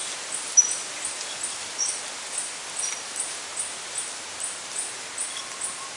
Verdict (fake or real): real